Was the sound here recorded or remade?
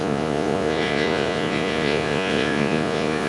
remade